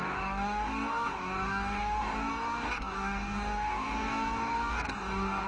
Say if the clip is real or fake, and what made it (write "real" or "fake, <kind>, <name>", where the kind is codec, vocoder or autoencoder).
fake, codec, DAC